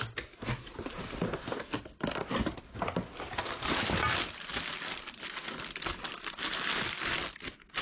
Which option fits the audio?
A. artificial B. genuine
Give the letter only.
B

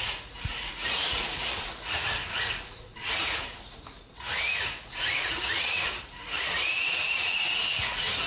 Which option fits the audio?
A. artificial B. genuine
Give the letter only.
A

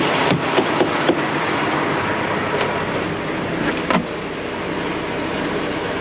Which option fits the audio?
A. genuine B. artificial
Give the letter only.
A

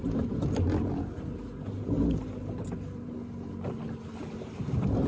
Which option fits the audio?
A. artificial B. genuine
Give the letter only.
B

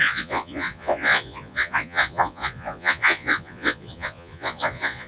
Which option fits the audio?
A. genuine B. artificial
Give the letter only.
B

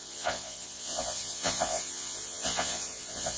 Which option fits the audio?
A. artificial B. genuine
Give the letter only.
A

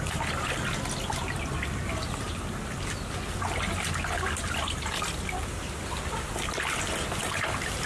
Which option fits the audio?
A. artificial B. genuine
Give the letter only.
B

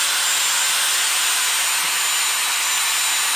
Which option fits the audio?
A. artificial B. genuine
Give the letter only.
B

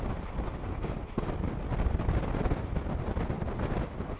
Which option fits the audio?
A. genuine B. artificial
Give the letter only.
A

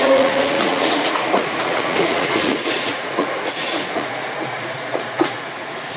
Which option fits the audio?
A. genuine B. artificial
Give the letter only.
B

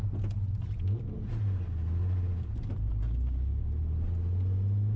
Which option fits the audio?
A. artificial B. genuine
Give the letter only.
B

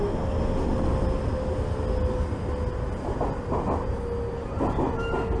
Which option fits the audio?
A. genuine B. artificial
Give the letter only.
A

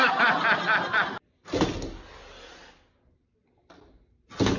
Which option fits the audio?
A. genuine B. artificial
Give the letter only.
A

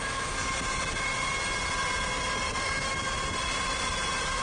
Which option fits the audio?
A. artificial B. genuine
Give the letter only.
B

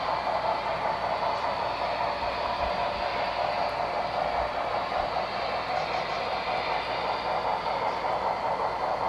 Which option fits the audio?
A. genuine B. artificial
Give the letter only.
A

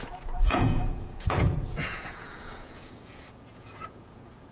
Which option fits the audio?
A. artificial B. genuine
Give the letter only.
A